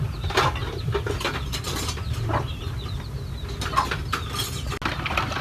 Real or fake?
real